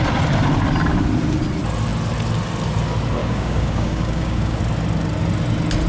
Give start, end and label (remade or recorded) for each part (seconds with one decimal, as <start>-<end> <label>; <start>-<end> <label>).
0.0-3.2 recorded; 3.2-4.6 remade; 4.6-5.9 recorded